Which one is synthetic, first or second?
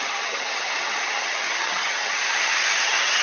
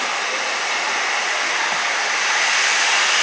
first